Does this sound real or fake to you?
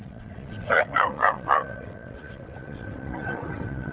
fake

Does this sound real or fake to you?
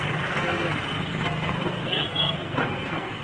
fake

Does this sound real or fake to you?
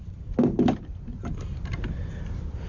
real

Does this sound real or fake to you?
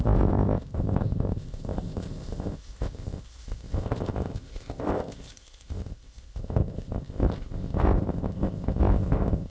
fake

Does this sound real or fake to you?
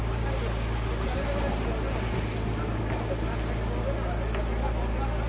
real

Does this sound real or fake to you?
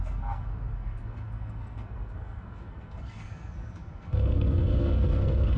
fake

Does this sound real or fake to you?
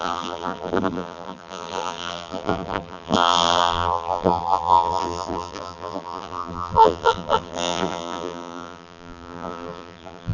fake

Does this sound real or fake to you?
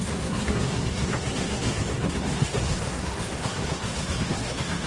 fake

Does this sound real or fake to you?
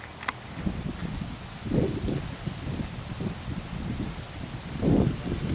real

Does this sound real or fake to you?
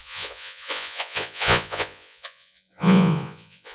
fake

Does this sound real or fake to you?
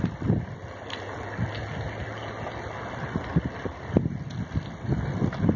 real